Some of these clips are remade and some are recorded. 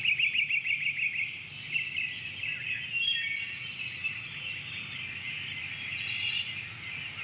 recorded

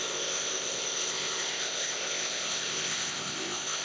remade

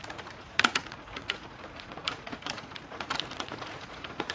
remade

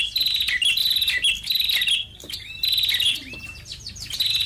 recorded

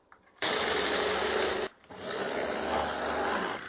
recorded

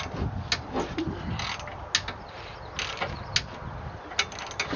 recorded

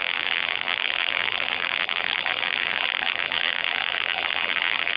remade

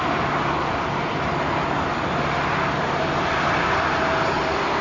recorded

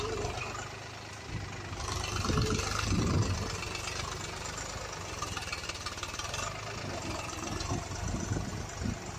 recorded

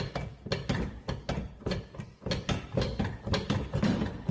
recorded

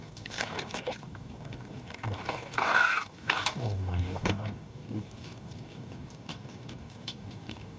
remade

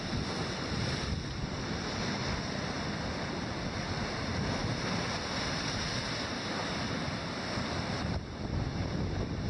recorded